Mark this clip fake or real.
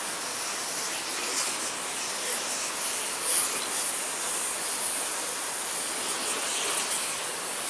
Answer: real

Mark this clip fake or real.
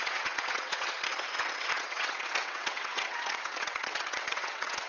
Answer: fake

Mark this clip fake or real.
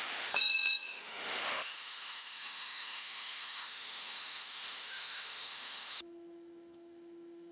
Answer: fake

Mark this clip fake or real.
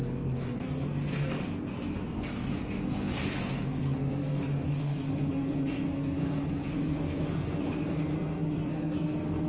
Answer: fake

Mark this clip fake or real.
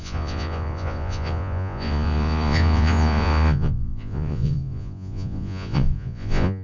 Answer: fake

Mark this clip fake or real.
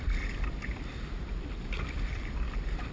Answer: real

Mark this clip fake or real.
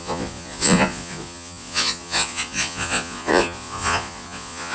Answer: fake